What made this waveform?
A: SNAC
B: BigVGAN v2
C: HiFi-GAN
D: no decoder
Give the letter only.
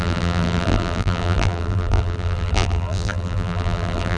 B